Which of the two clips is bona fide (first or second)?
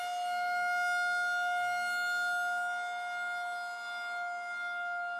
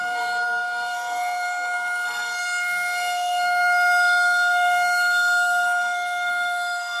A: first